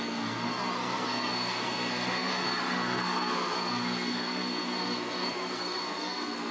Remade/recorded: remade